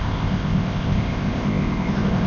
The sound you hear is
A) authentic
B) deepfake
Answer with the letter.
B